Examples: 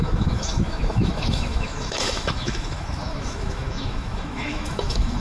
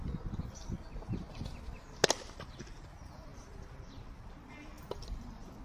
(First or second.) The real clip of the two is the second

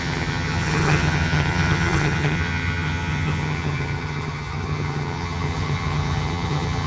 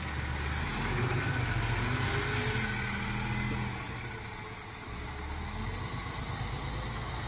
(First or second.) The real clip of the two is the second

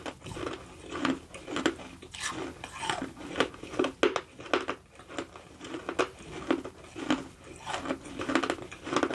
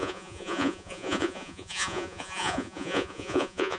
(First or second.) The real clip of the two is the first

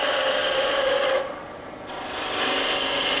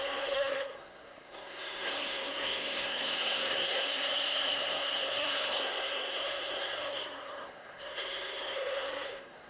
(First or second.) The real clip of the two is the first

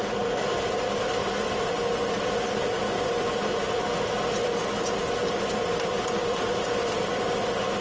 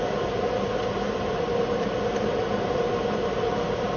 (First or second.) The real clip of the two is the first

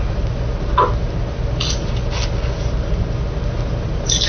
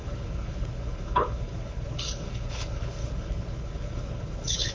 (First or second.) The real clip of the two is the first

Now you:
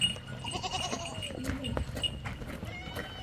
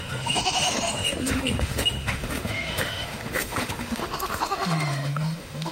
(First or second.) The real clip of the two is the first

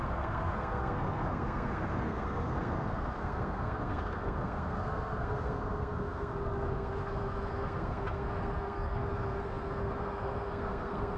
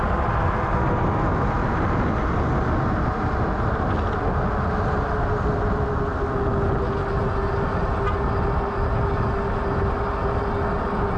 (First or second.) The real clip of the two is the second